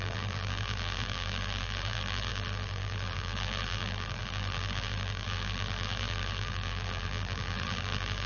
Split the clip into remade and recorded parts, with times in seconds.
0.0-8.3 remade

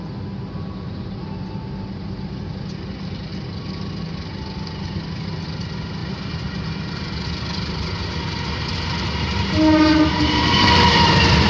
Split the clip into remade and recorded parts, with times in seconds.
0.0-11.5 recorded

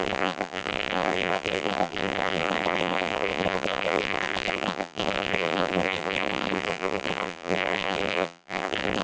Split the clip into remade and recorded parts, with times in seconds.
0.0-9.0 remade

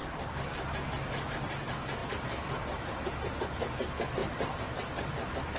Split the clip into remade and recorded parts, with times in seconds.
0.0-0.5 remade; 0.5-4.2 recorded; 4.2-5.6 remade

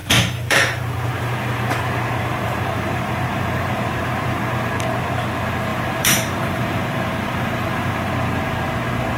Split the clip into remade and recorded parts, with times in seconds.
0.0-4.7 remade; 4.7-5.7 recorded; 5.7-8.1 remade; 8.1-9.2 recorded

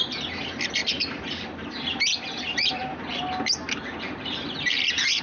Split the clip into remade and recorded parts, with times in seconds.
0.0-0.8 recorded; 0.8-3.2 remade; 3.2-5.2 recorded

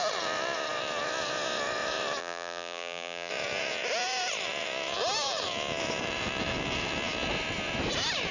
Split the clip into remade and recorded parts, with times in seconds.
0.0-2.2 recorded; 2.2-3.3 remade; 3.3-8.3 recorded

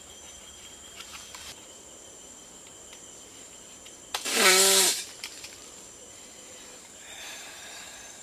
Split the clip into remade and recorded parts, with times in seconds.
0.0-8.2 remade